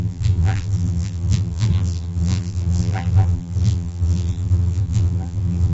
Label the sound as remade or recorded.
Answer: remade